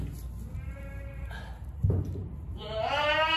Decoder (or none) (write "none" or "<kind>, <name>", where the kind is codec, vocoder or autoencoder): none